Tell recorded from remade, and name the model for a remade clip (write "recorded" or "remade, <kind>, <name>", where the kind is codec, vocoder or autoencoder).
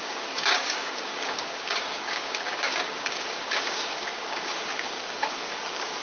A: remade, codec, DAC